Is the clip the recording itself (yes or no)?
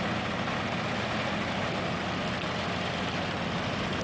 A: yes